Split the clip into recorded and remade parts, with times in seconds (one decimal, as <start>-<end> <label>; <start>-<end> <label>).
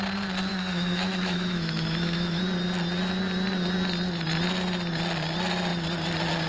0.0-0.5 recorded; 0.5-2.4 remade; 2.4-6.5 recorded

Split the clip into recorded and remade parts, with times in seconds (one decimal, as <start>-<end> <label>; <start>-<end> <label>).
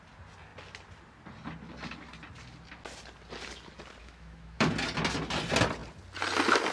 0.0-4.0 recorded; 4.0-4.7 remade; 4.7-6.7 recorded